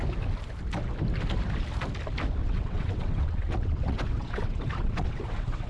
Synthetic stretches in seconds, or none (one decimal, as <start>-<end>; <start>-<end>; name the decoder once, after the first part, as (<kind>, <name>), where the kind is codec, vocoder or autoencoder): 2.4-5.7 (vocoder, WaveNeXt)